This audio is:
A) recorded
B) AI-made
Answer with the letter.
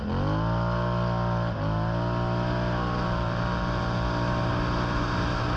A